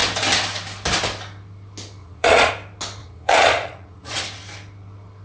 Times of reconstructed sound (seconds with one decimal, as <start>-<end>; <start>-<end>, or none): 2.0-2.5; 3.0-4.2